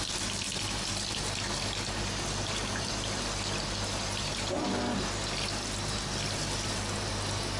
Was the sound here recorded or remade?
recorded